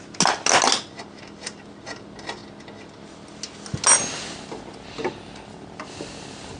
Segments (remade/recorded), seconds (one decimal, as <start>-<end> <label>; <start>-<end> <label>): 0.0-6.6 recorded